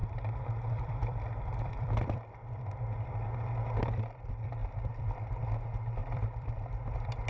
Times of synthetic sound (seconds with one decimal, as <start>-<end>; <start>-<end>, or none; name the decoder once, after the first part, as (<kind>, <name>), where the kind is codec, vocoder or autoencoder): 0.0-2.7 (vocoder, BigVGAN v2); 4.6-5.4; 6.0-6.8